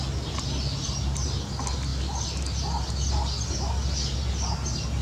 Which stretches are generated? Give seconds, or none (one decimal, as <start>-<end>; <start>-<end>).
none